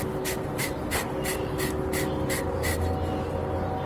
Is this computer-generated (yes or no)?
no